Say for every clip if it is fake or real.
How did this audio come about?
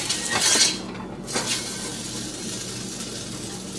real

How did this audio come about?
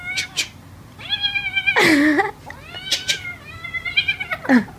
real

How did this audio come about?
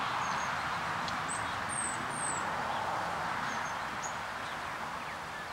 real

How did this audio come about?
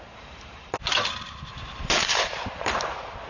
fake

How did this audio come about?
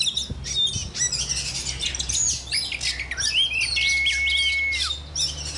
real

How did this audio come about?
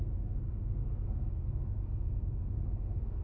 fake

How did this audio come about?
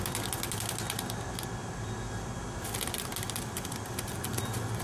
real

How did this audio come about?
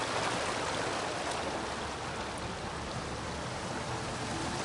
real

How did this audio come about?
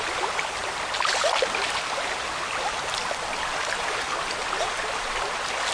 real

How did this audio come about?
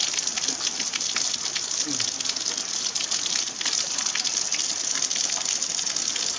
real